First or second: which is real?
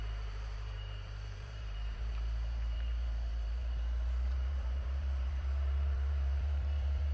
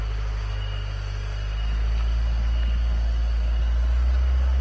second